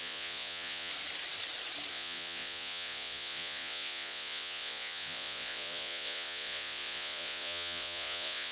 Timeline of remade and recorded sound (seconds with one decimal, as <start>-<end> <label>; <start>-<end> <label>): 0.0-0.9 remade; 0.9-1.9 recorded; 1.9-8.5 remade